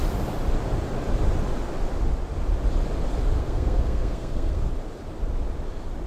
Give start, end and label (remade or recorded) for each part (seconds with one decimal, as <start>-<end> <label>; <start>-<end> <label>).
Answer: 0.0-3.4 recorded; 3.4-4.7 remade; 4.7-6.1 recorded